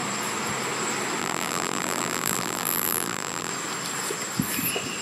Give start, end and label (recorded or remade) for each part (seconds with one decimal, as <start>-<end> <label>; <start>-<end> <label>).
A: 0.0-1.2 recorded; 1.2-3.5 remade; 3.5-5.0 recorded